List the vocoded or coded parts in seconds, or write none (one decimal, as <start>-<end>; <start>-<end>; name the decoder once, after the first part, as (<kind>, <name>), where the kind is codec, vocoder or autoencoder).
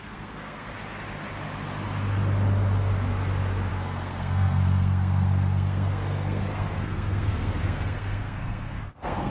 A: 0.0-0.7 (codec, SNAC); 3.7-9.3